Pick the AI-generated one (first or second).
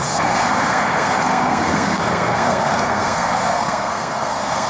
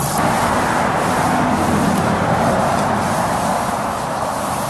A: first